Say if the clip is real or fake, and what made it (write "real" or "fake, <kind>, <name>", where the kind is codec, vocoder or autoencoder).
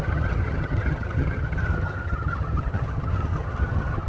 fake, vocoder, HiFi-GAN